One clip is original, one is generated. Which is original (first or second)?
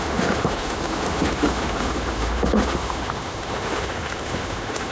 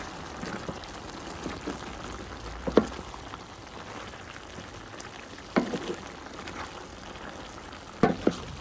second